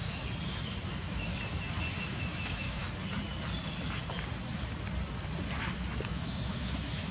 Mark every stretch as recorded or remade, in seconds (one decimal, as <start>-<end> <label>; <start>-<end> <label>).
0.0-0.9 recorded; 0.9-1.3 remade; 1.3-2.0 recorded; 2.0-2.8 remade; 2.8-6.1 recorded; 6.1-7.1 remade